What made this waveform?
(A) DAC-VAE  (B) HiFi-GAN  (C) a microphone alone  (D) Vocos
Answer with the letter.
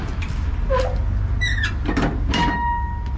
C